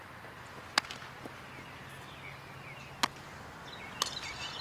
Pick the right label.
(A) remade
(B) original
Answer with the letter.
B